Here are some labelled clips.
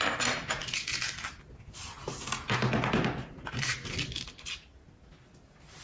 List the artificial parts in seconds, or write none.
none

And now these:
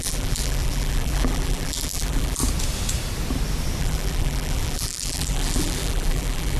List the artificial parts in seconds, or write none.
0.0-2.4 (vocoder, BigVGAN v2); 3.8-6.6

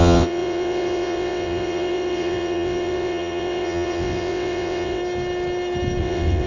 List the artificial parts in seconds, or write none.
0.0-5.0 (vocoder, WaveNeXt); 6.0-6.5

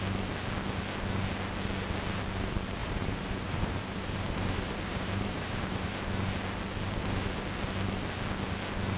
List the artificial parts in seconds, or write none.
2.8-6.0 (vocoder, BigVGAN v2)